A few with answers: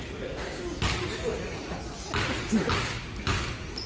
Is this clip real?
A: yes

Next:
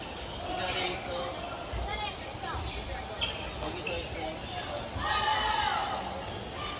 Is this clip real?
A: yes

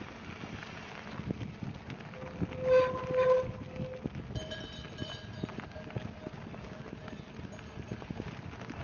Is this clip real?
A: yes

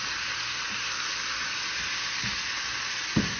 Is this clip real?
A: yes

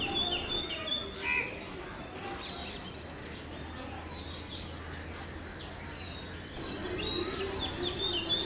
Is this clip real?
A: yes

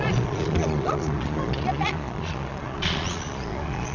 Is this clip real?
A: no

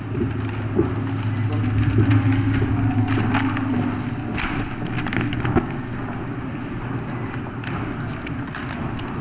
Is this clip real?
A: yes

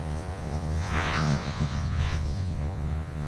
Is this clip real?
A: no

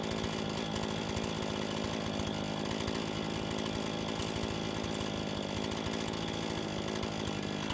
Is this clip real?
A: yes